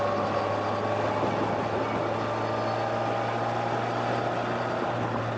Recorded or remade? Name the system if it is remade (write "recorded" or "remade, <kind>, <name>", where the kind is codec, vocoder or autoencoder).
recorded